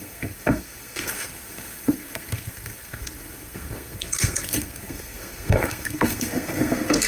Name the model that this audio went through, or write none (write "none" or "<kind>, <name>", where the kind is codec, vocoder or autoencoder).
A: codec, SNAC